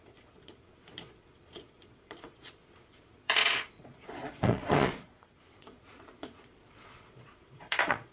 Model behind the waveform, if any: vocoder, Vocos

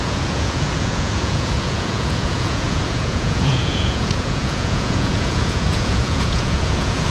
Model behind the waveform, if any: vocoder, Vocos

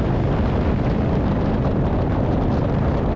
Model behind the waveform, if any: none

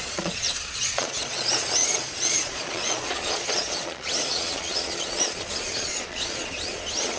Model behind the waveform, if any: vocoder, Vocos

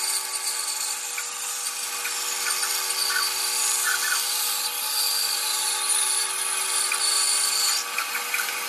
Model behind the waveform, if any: none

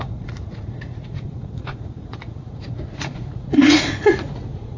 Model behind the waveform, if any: vocoder, Vocos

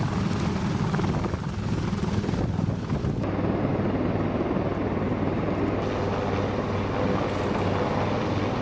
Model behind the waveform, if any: none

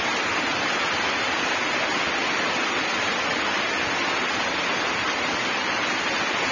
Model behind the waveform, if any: none